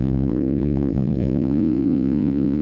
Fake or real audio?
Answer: fake